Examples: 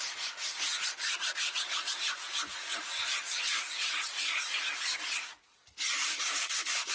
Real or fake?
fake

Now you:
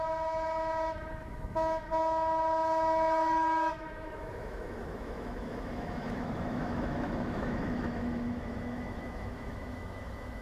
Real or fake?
fake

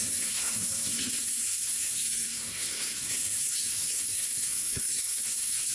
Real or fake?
fake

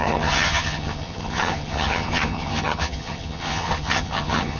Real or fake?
fake